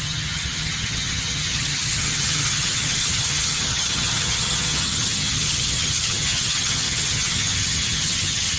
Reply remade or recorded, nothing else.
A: remade